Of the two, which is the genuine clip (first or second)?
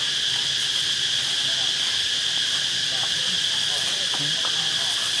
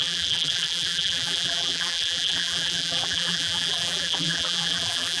first